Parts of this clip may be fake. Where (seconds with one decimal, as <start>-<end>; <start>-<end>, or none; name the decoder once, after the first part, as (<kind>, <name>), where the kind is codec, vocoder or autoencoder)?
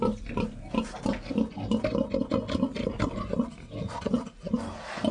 none